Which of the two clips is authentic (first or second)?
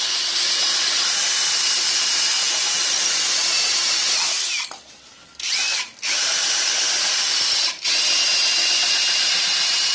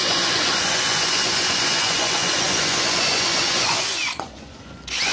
first